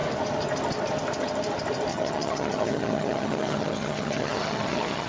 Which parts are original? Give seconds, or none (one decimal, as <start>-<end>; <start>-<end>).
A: 0.0-1.9